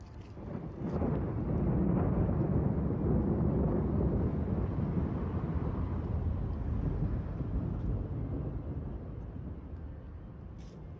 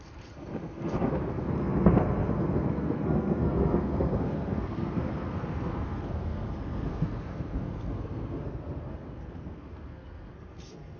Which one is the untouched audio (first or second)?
first